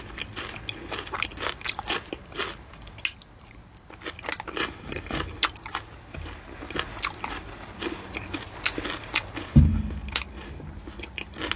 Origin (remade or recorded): recorded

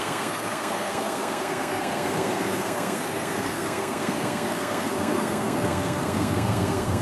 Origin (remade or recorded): remade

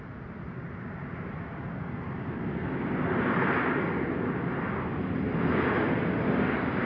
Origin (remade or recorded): recorded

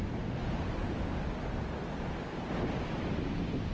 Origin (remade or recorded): recorded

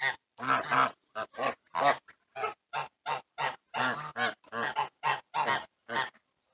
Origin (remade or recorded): recorded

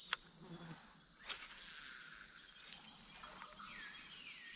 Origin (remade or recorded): recorded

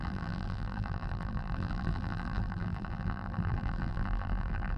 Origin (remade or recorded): remade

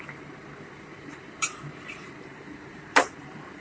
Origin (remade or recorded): remade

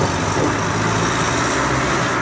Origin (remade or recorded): recorded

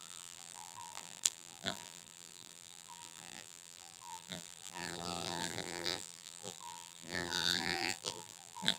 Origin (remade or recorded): remade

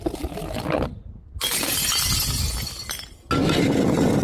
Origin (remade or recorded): recorded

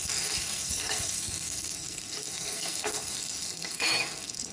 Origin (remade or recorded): remade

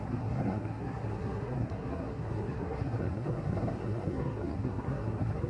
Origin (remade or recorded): remade